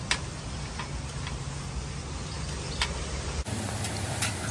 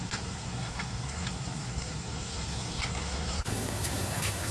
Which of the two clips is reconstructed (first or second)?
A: second